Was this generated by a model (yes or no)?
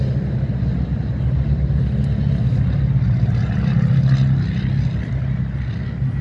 no